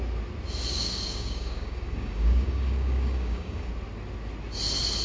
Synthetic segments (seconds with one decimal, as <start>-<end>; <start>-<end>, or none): 0.7-3.7